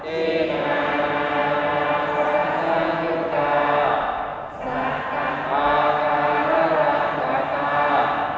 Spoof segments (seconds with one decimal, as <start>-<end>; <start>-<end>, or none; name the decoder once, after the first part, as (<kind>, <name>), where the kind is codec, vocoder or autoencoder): 2.4-3.1 (vocoder, Vocos)